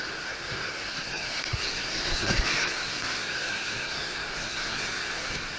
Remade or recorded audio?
remade